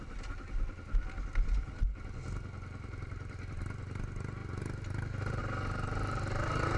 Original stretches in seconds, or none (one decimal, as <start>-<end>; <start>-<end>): 0.0-6.8